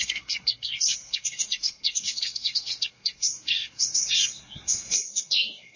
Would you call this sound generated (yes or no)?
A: yes